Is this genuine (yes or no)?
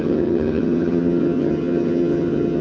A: no